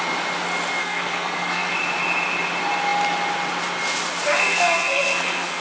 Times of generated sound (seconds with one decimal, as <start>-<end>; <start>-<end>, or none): 0.8-1.7; 4.4-5.6